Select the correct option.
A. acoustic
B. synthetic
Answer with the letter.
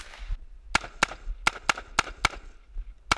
A